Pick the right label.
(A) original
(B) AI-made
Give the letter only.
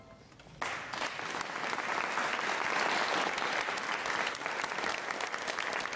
A